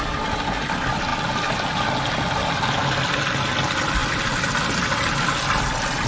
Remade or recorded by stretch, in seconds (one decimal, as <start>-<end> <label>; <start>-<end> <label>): 0.0-6.1 recorded